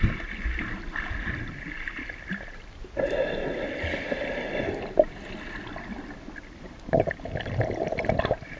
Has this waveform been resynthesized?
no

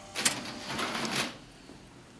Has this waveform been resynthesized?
no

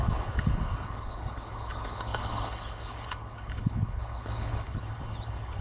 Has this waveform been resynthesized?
yes